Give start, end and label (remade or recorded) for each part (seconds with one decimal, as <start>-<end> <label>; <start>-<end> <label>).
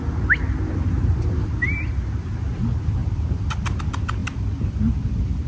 0.0-5.5 recorded